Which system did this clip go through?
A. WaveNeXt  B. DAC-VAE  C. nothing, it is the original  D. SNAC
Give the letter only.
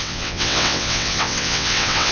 A